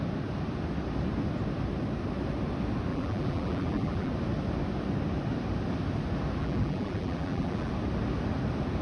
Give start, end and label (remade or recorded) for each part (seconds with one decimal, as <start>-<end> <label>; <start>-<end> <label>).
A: 0.0-2.9 recorded; 2.9-4.1 remade; 4.1-6.4 recorded; 6.4-7.7 remade; 7.7-8.8 recorded